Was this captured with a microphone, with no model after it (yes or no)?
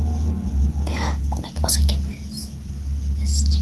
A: yes